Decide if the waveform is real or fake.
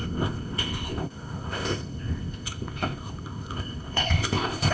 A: fake